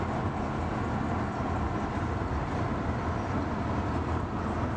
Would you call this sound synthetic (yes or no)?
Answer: no